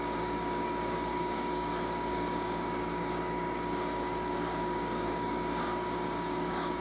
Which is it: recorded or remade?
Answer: remade